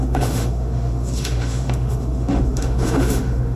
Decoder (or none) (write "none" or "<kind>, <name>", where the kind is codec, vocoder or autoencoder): autoencoder, DAC-VAE